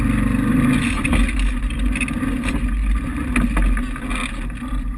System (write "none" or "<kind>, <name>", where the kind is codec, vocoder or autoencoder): none